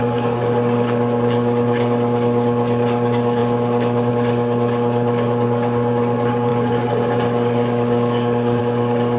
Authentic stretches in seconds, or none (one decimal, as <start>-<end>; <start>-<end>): none